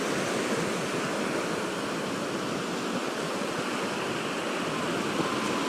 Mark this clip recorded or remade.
recorded